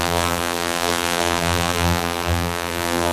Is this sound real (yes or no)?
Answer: no